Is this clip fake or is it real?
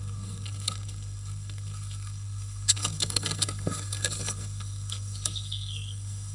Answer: fake